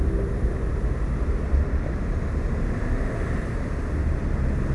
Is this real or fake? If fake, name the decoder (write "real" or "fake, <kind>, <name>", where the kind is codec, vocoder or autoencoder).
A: real